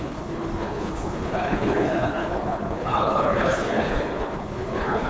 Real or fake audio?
fake